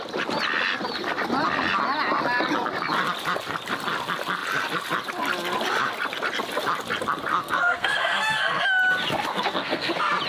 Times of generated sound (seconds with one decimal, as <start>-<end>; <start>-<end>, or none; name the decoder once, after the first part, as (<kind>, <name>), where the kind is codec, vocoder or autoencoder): 7.3-8.6 (codec, SNAC); 9.3-9.9